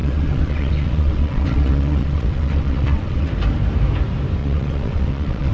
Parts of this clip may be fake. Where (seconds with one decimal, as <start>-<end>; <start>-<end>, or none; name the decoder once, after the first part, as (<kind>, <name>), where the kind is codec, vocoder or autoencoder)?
0.0-3.3 (vocoder, WaveNeXt); 4.4-5.5